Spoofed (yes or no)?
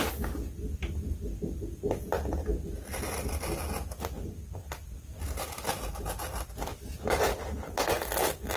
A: no